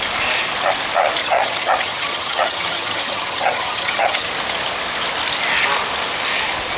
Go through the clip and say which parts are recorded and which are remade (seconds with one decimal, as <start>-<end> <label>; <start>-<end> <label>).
0.0-1.2 recorded; 1.2-4.3 remade; 4.3-6.8 recorded

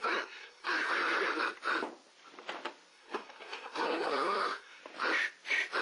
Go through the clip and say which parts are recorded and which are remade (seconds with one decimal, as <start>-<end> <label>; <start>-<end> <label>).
0.0-0.9 remade; 0.9-2.9 recorded; 2.9-4.8 remade; 4.8-5.8 recorded